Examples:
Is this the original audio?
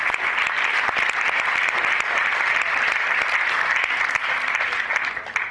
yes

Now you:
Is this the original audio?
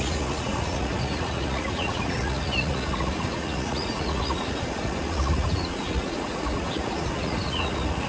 no